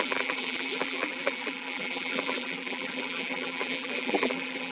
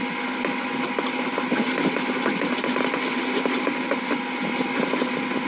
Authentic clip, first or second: second